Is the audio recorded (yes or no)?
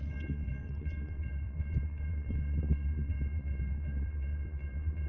no